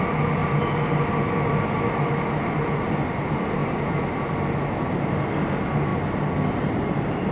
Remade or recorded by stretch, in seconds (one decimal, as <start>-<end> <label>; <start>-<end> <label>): 0.0-7.3 recorded